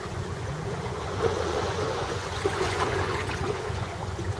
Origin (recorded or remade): remade